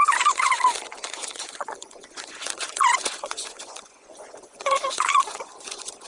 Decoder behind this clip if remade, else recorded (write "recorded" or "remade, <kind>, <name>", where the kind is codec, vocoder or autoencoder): remade, vocoder, Vocos